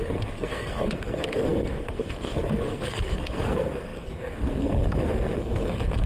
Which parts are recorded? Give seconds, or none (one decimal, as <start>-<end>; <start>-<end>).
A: none